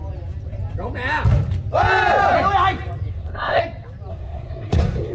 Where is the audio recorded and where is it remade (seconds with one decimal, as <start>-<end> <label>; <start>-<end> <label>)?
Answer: 0.0-3.1 recorded; 3.1-3.6 remade; 3.6-4.1 recorded; 4.1-5.1 remade